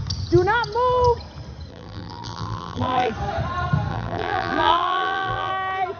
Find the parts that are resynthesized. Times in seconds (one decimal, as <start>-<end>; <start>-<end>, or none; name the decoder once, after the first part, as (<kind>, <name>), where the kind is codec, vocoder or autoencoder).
1.7-3.1 (vocoder, BigVGAN v2); 3.9-5.5